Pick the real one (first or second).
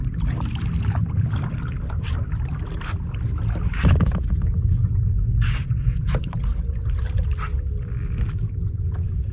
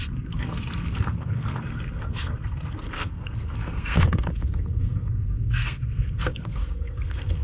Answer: first